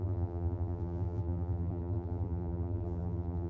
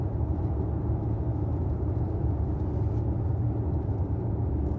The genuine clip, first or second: second